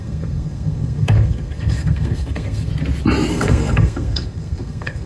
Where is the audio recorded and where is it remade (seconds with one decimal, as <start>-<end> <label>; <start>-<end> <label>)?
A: 0.0-2.7 remade; 2.7-3.3 recorded; 3.3-5.1 remade